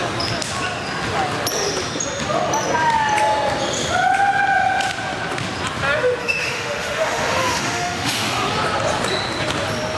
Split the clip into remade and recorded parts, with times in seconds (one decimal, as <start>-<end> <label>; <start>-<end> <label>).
0.0-6.2 recorded; 6.2-8.5 remade; 8.5-10.0 recorded